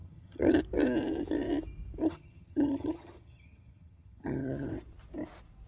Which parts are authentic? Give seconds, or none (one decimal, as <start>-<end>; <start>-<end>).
0.6-2.0; 4.7-5.7

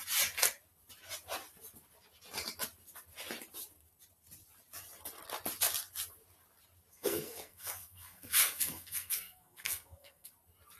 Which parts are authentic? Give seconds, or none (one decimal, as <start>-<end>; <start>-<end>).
0.0-6.9; 10.3-10.8

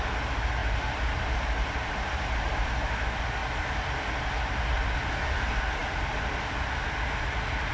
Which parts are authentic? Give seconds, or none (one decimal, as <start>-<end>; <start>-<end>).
0.0-0.6; 2.9-5.8; 6.5-7.7

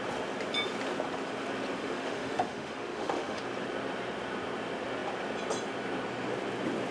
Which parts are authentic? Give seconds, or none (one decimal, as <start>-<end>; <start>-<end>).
0.0-1.8; 3.4-6.9

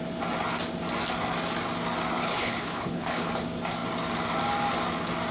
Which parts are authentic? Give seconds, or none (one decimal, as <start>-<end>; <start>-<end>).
0.0-2.2; 3.3-5.3

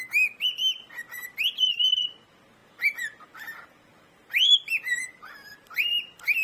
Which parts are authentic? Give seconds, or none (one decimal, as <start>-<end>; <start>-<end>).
0.0-6.4

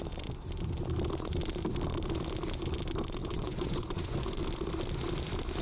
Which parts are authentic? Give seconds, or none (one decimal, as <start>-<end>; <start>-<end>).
0.0-3.2; 4.4-5.6

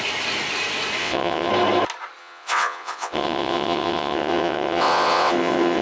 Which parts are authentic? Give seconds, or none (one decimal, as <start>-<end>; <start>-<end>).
0.0-1.0; 1.5-2.2